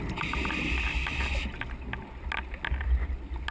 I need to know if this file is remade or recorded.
recorded